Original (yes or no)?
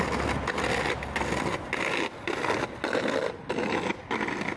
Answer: yes